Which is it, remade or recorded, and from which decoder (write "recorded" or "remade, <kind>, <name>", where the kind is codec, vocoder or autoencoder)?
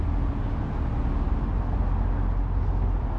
recorded